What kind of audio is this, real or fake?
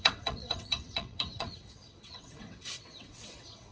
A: fake